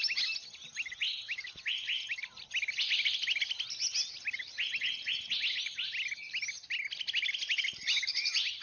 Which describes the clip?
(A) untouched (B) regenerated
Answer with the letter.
A